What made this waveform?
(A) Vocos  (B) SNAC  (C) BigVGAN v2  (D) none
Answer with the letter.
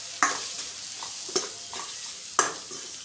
D